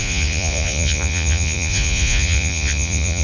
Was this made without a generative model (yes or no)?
no